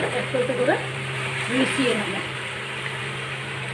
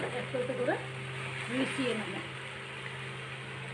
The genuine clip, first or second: second